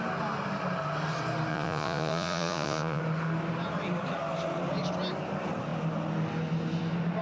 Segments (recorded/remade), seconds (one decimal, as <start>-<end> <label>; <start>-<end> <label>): 0.0-1.5 recorded; 1.5-3.0 remade; 3.0-7.2 recorded